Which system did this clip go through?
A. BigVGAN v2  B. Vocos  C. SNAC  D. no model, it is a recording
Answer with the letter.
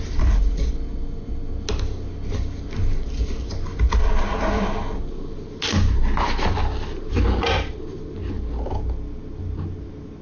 D